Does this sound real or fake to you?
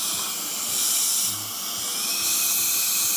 real